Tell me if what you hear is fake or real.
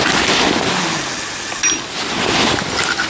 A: real